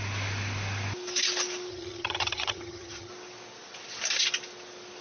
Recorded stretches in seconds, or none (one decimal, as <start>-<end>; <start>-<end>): 0.0-1.7; 3.1-5.0